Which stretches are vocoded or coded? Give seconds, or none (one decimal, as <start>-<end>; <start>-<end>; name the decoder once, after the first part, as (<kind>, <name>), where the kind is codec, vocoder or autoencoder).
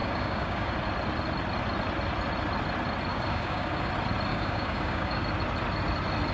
0.0-0.7 (codec, DAC); 3.1-3.9; 4.3-5.2